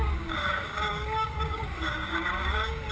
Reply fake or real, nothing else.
fake